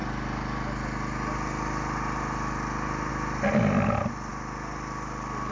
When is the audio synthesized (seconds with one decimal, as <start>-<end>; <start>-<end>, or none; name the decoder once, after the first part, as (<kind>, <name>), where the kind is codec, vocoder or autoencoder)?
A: none